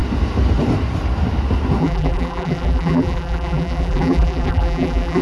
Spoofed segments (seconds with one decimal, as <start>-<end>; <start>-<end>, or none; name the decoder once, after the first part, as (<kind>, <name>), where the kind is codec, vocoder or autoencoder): 1.8-5.2 (vocoder, BigVGAN v2)